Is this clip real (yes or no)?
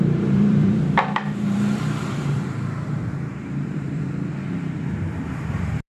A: no